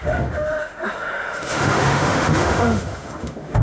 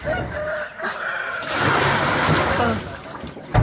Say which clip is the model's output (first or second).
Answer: first